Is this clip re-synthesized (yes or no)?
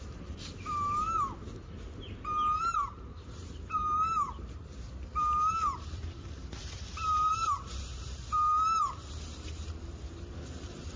yes